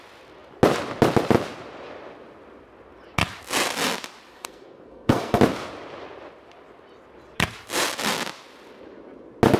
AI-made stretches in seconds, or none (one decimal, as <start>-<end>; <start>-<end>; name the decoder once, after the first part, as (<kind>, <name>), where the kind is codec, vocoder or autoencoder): 4.3-5.4 (codec, SNAC)